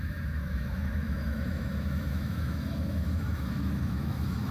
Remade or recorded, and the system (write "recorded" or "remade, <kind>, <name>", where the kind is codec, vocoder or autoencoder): remade, autoencoder, DAC-VAE